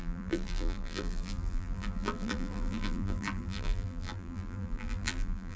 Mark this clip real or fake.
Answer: fake